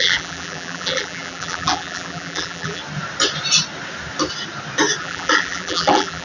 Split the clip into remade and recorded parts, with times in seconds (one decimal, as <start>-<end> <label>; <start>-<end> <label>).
0.0-2.8 remade; 2.8-5.0 recorded; 5.0-6.2 remade